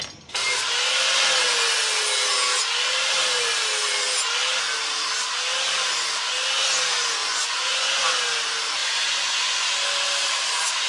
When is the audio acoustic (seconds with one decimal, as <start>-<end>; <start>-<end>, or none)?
0.0-7.2; 8.1-8.8; 9.7-10.9